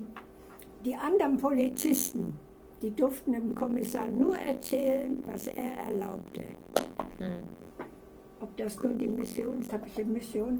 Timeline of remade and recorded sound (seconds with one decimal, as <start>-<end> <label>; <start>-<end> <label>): 0.0-1.6 recorded; 1.6-2.3 remade; 2.3-3.5 recorded; 3.5-7.7 remade; 7.7-8.8 recorded; 8.8-9.7 remade; 9.7-10.6 recorded